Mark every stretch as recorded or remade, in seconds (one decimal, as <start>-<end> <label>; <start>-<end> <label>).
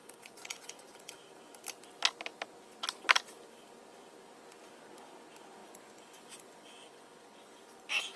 0.0-1.1 remade; 1.1-5.6 recorded; 5.6-7.6 remade; 7.6-8.2 recorded